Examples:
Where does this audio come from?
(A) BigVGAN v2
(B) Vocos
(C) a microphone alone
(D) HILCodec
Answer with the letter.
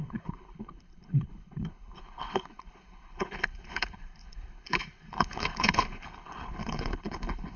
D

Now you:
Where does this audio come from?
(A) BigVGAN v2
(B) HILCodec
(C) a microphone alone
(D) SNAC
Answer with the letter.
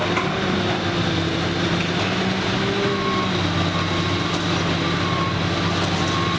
C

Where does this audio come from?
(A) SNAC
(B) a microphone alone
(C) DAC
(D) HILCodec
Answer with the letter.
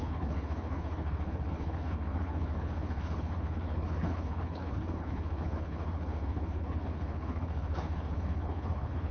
D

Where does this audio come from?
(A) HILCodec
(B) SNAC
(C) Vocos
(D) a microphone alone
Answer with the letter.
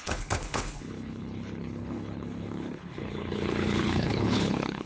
A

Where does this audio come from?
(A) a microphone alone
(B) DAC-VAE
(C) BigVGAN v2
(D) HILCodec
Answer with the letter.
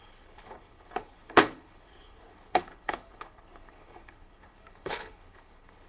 D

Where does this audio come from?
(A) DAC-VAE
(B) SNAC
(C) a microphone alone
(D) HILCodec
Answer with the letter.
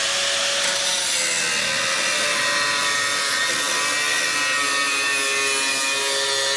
C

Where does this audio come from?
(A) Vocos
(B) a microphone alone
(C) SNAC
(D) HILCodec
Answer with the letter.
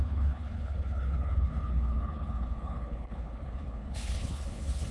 D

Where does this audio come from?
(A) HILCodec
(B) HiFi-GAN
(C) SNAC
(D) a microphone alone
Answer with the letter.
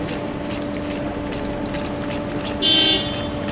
D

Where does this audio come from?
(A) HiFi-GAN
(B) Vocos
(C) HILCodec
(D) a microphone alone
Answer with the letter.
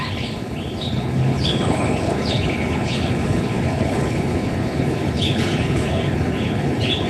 C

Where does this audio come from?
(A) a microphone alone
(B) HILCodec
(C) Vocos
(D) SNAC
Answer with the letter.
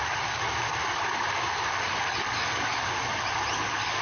A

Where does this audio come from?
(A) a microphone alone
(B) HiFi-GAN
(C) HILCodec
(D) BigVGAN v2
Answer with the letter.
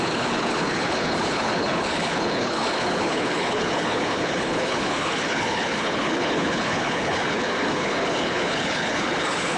C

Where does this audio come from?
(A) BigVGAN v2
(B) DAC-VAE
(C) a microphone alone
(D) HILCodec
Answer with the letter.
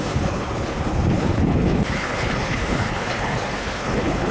D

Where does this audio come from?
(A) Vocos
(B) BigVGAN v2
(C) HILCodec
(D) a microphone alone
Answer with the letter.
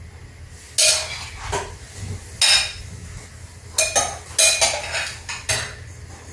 D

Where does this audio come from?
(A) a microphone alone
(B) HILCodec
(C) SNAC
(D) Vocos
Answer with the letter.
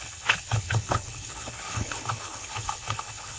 B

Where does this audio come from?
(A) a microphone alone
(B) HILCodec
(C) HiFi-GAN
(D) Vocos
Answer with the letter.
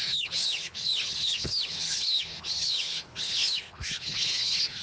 B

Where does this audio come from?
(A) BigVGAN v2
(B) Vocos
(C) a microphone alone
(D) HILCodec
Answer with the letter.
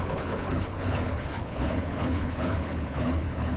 D